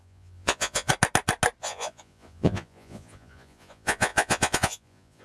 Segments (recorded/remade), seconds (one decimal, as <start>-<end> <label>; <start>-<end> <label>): 0.0-0.9 remade; 0.9-1.6 recorded; 1.6-5.2 remade